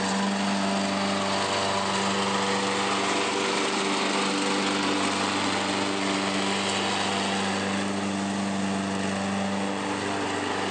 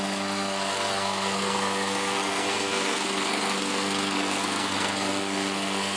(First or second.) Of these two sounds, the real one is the first